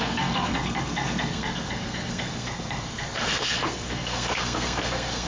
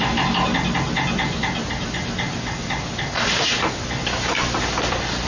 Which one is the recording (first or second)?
second